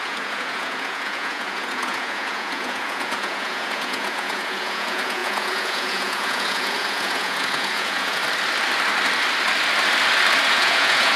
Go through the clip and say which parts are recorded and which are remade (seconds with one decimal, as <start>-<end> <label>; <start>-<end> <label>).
0.0-8.2 remade; 8.2-10.5 recorded; 10.5-11.2 remade